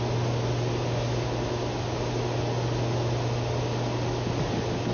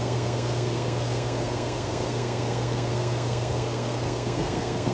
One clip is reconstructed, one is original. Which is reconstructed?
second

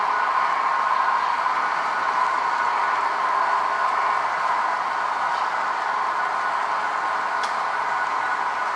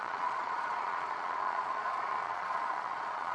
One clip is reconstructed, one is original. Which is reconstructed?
second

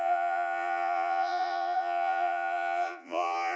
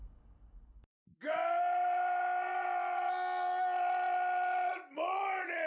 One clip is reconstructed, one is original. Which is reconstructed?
first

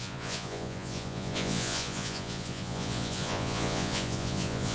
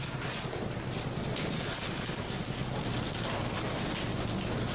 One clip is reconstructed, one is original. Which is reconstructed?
first